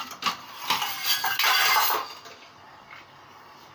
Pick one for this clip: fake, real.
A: real